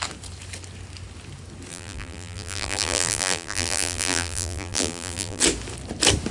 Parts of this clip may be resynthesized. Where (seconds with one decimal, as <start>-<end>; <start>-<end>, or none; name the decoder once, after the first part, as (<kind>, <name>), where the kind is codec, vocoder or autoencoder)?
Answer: 1.7-5.4 (vocoder, BigVGAN v2)